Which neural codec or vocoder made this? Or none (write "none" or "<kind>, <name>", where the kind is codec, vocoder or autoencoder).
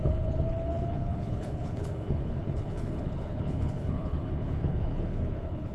codec, HILCodec